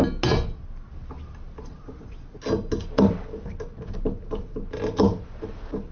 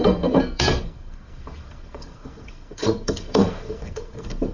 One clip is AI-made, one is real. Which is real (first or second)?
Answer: first